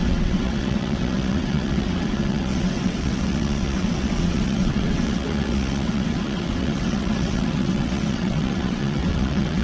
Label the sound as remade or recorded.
remade